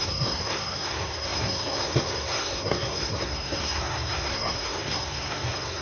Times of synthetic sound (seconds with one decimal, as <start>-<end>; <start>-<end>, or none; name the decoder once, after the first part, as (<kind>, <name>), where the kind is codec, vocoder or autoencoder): 0.0-5.8 (codec, SNAC)